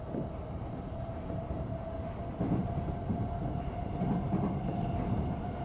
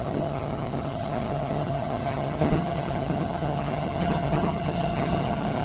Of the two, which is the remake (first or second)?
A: second